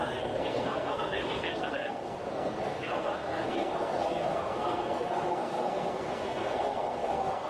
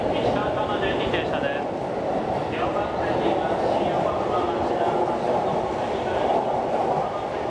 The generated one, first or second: first